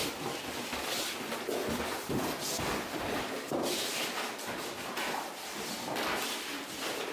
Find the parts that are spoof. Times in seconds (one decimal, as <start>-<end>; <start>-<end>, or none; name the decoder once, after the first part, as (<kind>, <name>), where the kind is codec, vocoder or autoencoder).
none

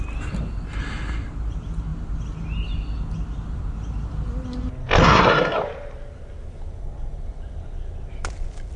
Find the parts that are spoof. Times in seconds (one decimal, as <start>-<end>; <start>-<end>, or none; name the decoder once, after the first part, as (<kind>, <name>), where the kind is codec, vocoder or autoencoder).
5.0-5.6 (codec, SNAC)

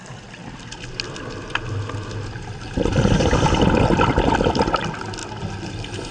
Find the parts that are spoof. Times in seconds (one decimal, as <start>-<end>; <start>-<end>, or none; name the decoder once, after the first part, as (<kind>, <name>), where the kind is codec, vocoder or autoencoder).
none